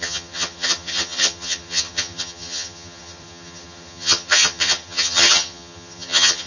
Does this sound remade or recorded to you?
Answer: remade